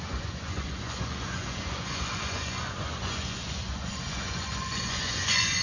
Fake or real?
fake